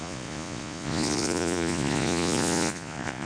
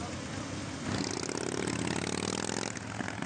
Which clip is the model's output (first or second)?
first